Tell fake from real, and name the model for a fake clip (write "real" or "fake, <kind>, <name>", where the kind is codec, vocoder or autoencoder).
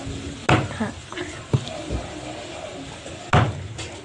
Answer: real